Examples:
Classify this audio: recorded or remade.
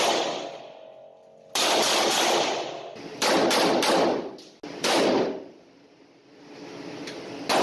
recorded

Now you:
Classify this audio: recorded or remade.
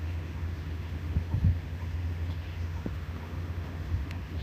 remade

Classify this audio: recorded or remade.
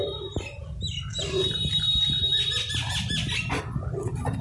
recorded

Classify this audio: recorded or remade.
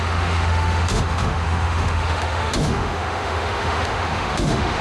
remade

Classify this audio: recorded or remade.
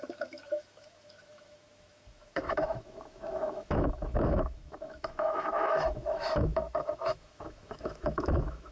remade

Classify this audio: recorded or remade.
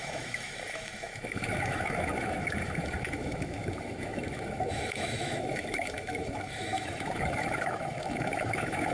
remade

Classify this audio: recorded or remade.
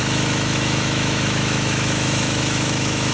remade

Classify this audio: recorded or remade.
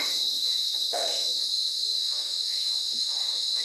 remade